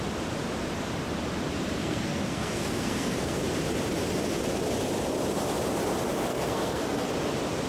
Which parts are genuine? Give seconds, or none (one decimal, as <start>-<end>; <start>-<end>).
0.0-1.8; 3.6-6.3; 7.1-7.7